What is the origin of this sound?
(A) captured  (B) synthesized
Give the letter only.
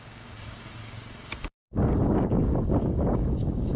B